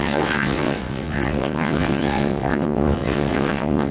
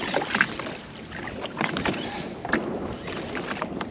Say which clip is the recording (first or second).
second